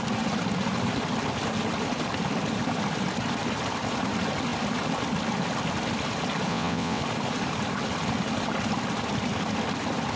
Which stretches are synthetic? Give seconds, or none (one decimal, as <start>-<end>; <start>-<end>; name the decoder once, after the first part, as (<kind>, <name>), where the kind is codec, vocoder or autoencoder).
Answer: 6.5-7.0 (vocoder, WaveNeXt)